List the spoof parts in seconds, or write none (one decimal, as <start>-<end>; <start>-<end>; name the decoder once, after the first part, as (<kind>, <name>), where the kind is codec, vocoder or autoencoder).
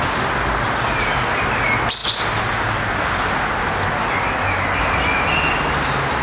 none